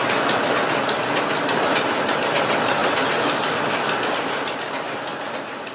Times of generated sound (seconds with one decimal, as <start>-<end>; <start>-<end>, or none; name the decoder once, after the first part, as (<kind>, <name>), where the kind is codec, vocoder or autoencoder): none